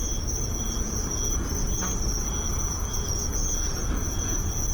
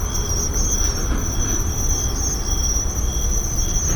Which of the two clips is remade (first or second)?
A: first